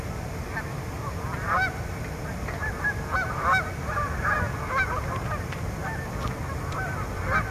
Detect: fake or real real